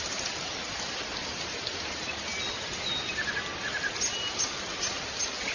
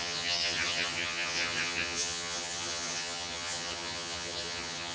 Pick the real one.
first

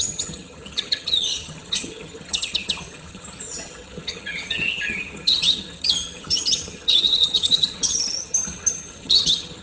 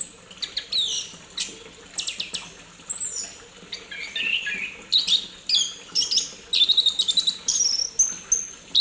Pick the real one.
second